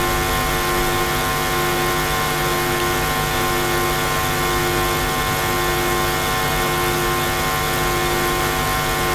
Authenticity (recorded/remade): recorded